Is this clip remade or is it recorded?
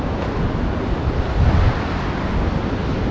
recorded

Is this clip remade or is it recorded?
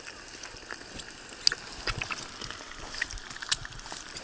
recorded